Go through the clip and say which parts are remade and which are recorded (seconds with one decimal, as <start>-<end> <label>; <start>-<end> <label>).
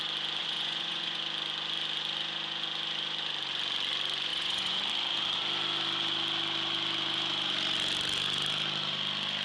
0.0-0.4 recorded; 0.4-1.2 remade; 1.2-4.3 recorded; 4.3-4.8 remade; 4.8-9.4 recorded